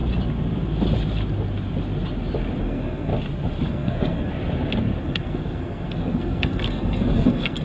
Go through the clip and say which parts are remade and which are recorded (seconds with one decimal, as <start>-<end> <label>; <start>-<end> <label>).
0.0-2.6 recorded; 2.6-3.1 remade; 3.1-3.7 recorded; 3.7-4.3 remade; 4.3-5.0 recorded; 5.0-7.6 remade